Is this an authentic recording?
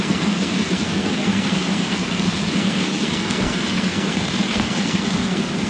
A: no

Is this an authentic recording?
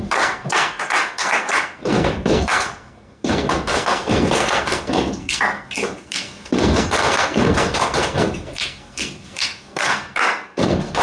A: no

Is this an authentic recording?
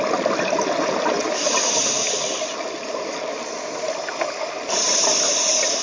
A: yes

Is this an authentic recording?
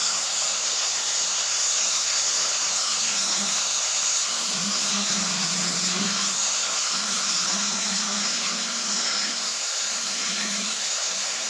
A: no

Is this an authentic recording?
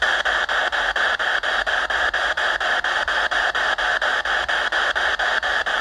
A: yes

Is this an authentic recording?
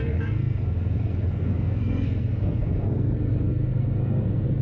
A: no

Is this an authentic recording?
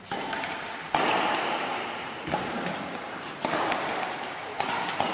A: yes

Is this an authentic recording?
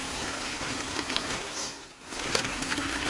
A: no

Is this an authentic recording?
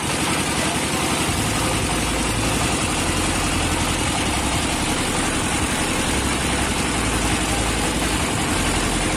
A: yes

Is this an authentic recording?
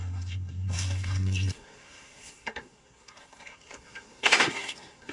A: no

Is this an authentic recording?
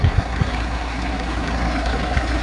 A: no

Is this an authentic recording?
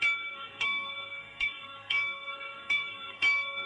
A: no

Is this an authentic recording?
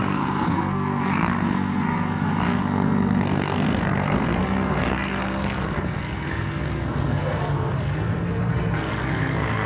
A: no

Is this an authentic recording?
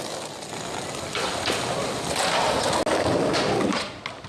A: yes